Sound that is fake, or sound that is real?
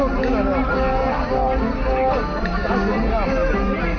real